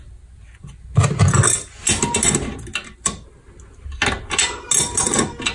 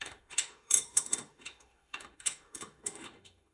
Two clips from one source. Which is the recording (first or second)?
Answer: first